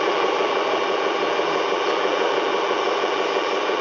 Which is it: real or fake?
fake